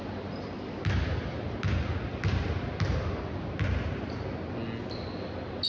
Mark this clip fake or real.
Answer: real